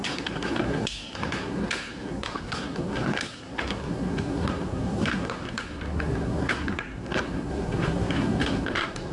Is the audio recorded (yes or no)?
no